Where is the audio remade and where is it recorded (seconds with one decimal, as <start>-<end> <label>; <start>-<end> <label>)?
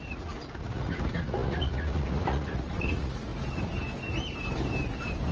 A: 0.0-3.3 remade; 3.3-5.3 recorded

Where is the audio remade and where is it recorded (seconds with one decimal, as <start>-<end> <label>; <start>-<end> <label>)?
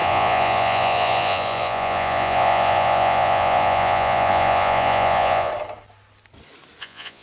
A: 0.0-5.5 remade; 5.5-6.8 recorded; 6.8-7.2 remade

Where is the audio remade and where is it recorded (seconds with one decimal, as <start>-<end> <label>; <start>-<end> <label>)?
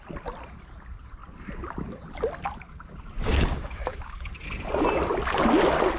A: 0.0-3.3 recorded; 3.3-4.3 remade; 4.3-6.0 recorded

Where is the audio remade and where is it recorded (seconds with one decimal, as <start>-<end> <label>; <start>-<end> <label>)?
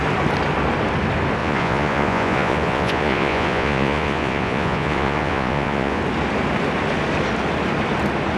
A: 0.0-1.4 recorded; 1.4-6.0 remade; 6.0-8.4 recorded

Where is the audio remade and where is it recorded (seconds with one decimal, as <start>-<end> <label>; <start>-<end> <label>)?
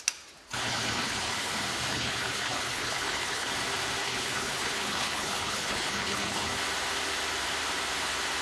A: 0.0-0.5 recorded; 0.5-1.5 remade; 1.5-1.9 recorded; 1.9-3.5 remade; 3.5-4.0 recorded; 4.0-6.5 remade; 6.5-8.4 recorded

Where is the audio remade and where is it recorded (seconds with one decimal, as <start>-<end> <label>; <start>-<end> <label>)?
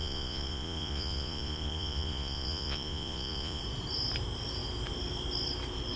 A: 0.0-3.6 remade; 3.6-6.0 recorded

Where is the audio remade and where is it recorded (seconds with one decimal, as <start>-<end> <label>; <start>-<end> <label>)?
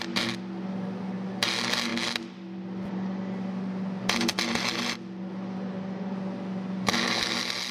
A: 0.0-7.7 recorded